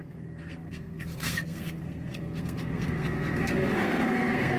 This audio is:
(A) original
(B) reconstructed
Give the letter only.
B